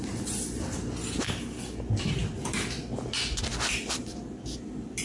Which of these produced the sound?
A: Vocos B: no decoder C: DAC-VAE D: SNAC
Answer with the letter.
B